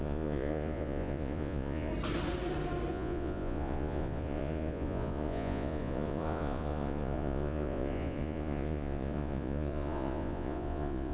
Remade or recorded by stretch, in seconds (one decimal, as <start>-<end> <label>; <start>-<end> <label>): 0.0-1.9 remade; 1.9-2.9 recorded; 2.9-11.1 remade